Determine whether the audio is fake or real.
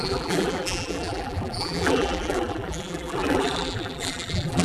fake